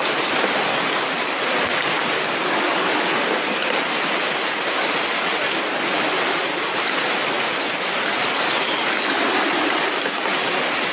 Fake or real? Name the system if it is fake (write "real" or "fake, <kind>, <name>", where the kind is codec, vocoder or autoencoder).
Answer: real